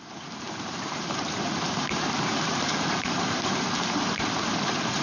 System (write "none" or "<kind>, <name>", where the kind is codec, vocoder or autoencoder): vocoder, BigVGAN v2